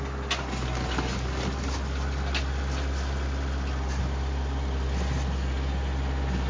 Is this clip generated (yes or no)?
no